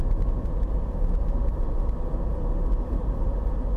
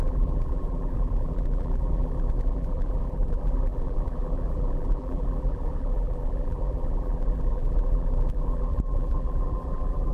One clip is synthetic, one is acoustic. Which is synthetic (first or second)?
second